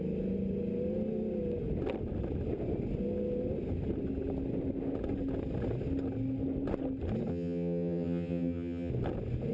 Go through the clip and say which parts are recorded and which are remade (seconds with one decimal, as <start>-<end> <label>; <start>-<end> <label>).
0.0-7.3 recorded; 7.3-8.9 remade; 8.9-9.5 recorded